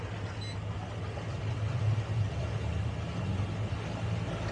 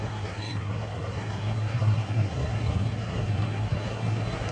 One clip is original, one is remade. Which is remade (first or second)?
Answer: second